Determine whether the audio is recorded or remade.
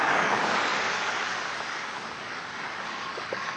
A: remade